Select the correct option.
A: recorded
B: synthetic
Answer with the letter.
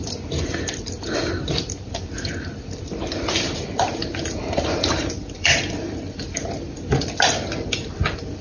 B